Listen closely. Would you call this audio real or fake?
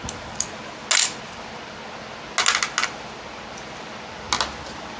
real